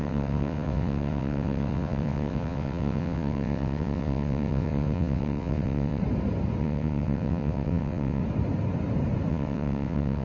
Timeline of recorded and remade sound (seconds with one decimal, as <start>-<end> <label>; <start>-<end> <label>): 0.0-6.0 remade; 6.0-6.6 recorded; 6.6-8.2 remade; 8.2-9.3 recorded; 9.3-10.2 remade